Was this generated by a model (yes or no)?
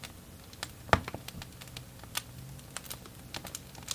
no